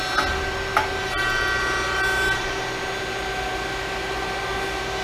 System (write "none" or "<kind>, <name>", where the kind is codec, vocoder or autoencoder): none